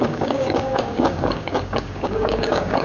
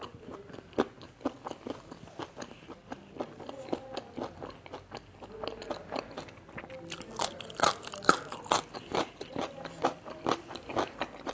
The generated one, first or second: first